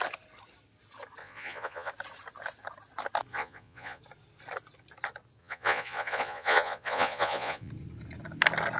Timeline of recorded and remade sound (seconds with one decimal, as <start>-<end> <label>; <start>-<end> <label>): 0.0-1.2 recorded; 1.2-1.9 remade; 1.9-3.3 recorded; 3.3-4.0 remade; 4.0-5.4 recorded; 5.4-7.7 remade; 7.7-8.8 recorded